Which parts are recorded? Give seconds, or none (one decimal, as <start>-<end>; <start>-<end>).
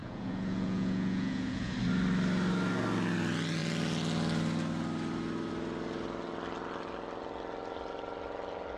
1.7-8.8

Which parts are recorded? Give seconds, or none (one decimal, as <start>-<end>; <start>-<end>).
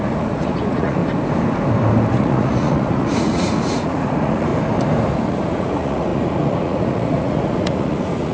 1.0-2.1; 4.5-5.1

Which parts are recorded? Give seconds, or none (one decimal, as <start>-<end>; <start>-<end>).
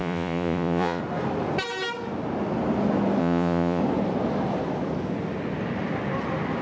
1.0-3.2; 3.8-6.6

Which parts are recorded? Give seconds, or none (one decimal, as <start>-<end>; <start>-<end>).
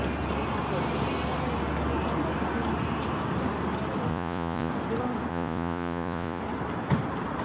0.0-4.1; 4.7-5.3; 6.4-7.4